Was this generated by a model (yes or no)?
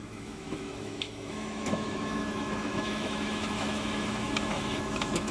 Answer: yes